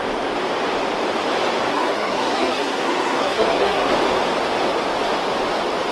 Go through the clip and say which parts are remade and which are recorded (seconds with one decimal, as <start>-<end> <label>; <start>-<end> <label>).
0.0-1.7 recorded; 1.7-3.9 remade; 3.9-5.9 recorded